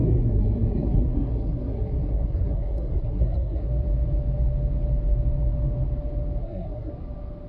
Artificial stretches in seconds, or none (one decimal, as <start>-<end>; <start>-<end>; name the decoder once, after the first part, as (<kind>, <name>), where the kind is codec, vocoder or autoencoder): 0.0-3.7 (codec, SNAC); 6.4-6.9